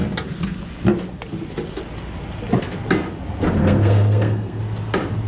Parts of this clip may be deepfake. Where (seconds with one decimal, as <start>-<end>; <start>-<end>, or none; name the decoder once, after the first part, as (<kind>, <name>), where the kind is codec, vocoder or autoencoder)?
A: 3.6-4.6 (codec, SNAC)